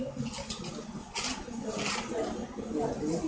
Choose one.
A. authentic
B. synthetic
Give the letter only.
A